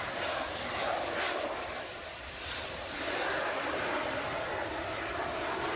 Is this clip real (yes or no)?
no